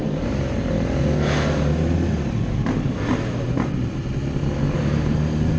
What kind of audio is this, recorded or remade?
recorded